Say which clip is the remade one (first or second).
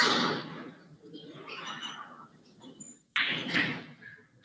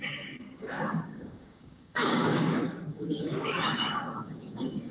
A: second